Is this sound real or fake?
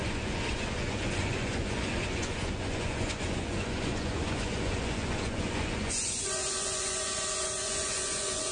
fake